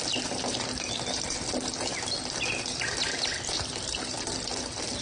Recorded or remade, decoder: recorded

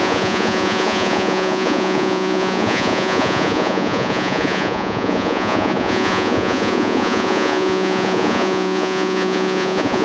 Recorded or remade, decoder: remade, vocoder, Vocos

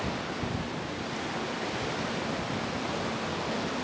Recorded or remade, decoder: recorded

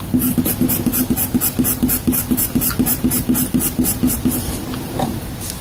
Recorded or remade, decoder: recorded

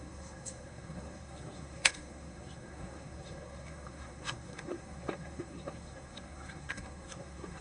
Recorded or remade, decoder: remade, codec, SNAC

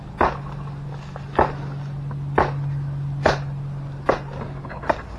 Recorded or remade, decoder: recorded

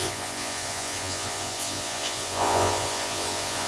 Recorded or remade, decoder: remade, vocoder, Vocos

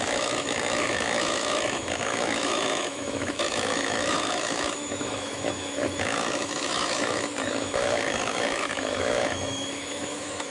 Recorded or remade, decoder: remade, autoencoder, DAC-VAE